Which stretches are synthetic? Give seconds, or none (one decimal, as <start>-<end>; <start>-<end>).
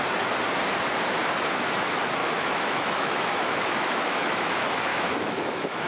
2.2-4.4; 4.9-5.9